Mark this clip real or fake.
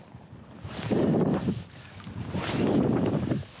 real